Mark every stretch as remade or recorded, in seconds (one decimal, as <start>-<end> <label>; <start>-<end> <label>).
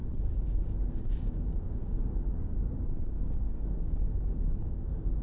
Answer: 0.0-5.2 remade